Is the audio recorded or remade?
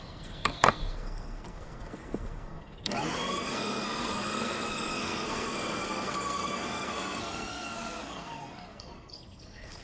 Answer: remade